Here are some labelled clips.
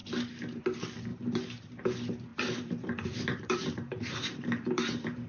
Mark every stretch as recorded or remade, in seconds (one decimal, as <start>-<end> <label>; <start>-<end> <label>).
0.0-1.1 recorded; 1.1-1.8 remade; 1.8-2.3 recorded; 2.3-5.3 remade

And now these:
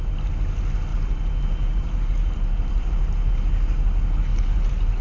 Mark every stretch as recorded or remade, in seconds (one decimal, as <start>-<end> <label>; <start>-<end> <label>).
0.0-0.9 recorded; 0.9-3.3 remade; 3.3-4.3 recorded; 4.3-5.0 remade

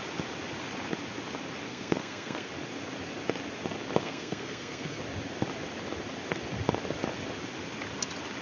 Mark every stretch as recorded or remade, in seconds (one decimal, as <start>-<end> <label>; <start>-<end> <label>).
0.0-1.7 recorded; 1.7-2.5 remade; 2.5-4.0 recorded; 4.0-5.0 remade; 5.0-8.4 recorded

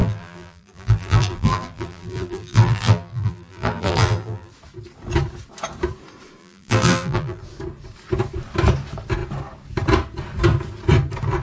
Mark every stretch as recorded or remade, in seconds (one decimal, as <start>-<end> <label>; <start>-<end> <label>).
0.0-4.5 remade; 4.5-6.4 recorded; 6.4-7.4 remade; 7.4-11.4 recorded

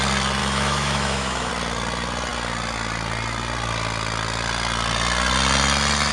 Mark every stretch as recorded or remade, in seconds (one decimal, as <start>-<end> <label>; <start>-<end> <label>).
0.0-0.4 recorded; 0.4-1.5 remade; 1.5-6.1 recorded

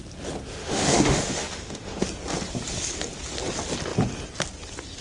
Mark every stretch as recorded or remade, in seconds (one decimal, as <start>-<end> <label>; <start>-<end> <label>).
0.0-0.5 recorded; 0.5-2.0 remade; 2.0-5.0 recorded